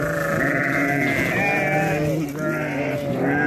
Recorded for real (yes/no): yes